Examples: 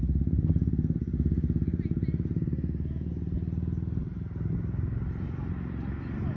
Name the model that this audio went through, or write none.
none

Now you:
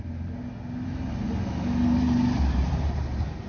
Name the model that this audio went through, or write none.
none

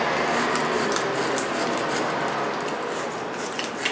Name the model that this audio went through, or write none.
none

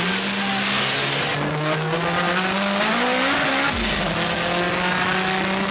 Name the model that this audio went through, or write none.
none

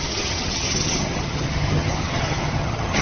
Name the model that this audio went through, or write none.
vocoder, HiFi-GAN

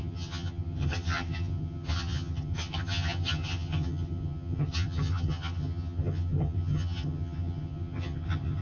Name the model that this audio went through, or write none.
vocoder, HiFi-GAN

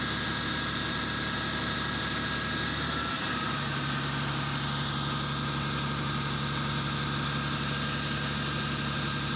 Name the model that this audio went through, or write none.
none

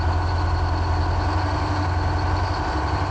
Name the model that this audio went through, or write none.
none